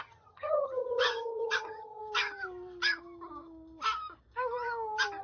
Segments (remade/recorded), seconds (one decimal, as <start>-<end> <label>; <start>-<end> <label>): 0.0-2.0 remade; 2.0-5.2 recorded